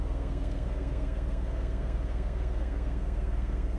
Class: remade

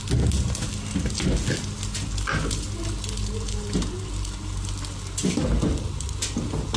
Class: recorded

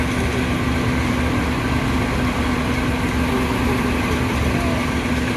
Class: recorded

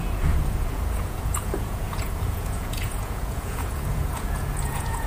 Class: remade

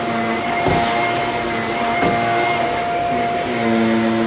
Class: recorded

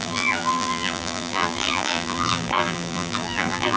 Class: remade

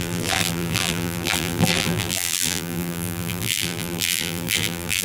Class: remade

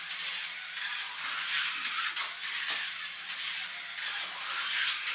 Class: recorded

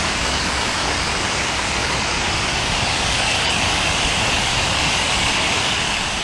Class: remade